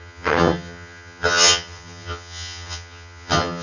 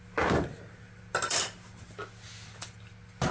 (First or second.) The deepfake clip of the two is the first